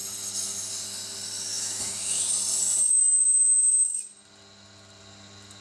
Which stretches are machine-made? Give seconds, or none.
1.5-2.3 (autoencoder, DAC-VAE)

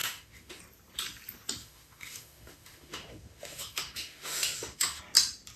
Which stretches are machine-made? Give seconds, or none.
0.0-0.6 (autoencoder, DAC-VAE); 1.6-5.0

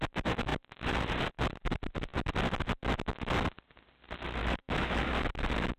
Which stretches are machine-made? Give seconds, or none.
4.4-5.1 (autoencoder, DAC-VAE)

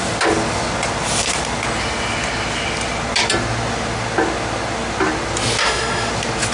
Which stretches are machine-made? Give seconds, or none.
5.6-6.1 (autoencoder, DAC-VAE)

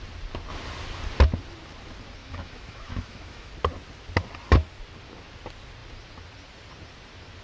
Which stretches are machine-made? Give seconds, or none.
2.2-3.5 (autoencoder, DAC-VAE)

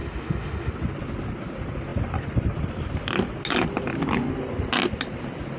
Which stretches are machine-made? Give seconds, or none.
0.0-0.7 (autoencoder, DAC-VAE)

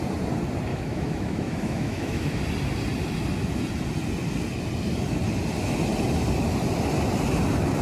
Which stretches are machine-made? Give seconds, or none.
0.7-2.4 (autoencoder, DAC-VAE)